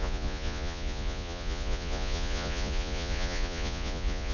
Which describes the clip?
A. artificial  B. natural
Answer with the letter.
A